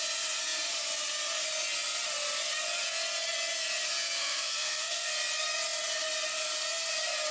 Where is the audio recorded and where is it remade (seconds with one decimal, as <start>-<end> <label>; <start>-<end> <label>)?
0.0-4.2 recorded; 4.2-5.1 remade; 5.1-7.3 recorded